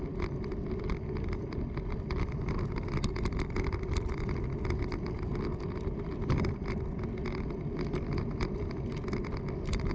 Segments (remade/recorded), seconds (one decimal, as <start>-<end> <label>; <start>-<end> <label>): 0.0-9.9 recorded